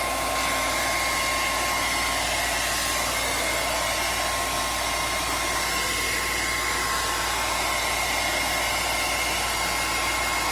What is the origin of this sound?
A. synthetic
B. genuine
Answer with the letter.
B